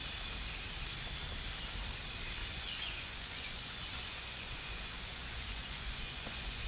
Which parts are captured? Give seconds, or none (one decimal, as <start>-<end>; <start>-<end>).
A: 0.0-2.4